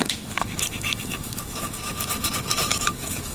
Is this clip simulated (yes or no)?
yes